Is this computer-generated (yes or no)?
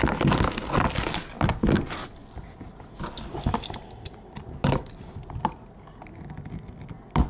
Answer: no